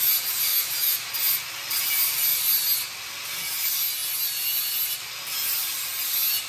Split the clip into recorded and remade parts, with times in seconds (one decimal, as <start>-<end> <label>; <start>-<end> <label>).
0.0-0.5 recorded; 0.5-1.1 remade; 1.1-6.5 recorded